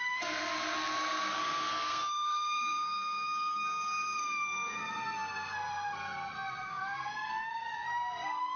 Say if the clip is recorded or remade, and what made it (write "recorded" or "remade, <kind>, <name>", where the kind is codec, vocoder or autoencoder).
remade, codec, SNAC